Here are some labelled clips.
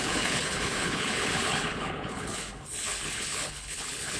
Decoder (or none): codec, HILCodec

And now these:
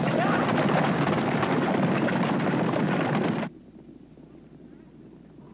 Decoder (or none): none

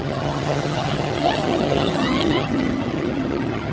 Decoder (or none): vocoder, HiFi-GAN